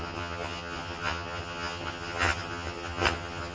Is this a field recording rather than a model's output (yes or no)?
no